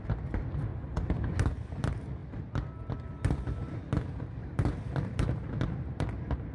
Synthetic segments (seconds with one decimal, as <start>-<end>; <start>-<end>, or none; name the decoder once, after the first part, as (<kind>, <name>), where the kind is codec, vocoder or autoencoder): none